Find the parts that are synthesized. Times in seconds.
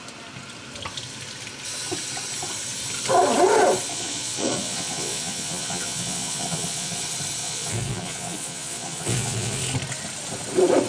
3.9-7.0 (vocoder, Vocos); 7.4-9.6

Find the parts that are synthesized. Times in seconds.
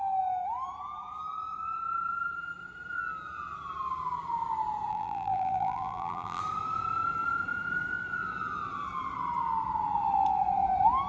4.9-6.4 (vocoder, BigVGAN v2)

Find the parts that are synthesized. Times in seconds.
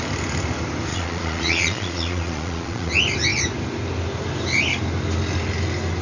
0.9-2.9 (vocoder, Vocos)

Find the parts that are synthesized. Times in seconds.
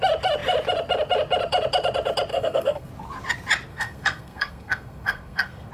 2.3-2.9 (codec, SNAC); 3.7-5.7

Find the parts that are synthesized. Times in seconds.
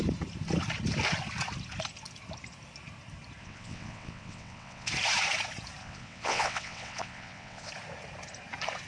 3.4-4.9 (vocoder, WaveNeXt); 5.8-7.7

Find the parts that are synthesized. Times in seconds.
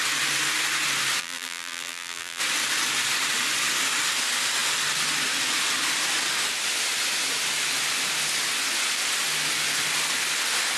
1.2-2.4 (vocoder, BigVGAN v2)